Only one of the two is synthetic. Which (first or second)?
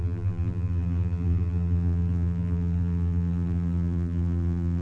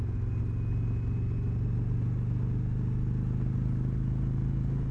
first